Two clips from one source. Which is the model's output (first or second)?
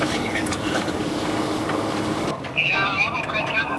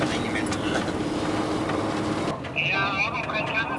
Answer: first